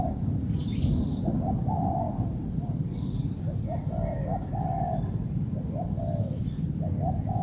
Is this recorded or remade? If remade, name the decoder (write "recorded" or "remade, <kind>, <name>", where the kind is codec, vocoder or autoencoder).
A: remade, vocoder, BigVGAN v2